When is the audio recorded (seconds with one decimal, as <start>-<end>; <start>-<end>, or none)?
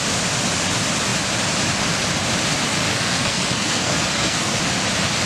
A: 0.0-2.7; 4.6-5.2